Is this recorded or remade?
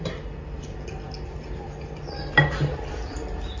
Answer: remade